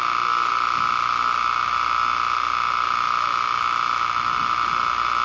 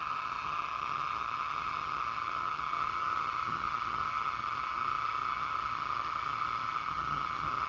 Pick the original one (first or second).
first